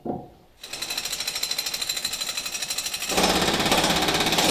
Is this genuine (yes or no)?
yes